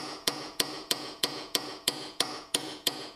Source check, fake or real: fake